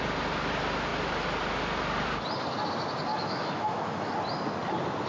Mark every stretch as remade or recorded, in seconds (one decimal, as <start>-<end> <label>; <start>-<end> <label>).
0.0-3.1 recorded; 3.1-4.1 remade; 4.1-5.1 recorded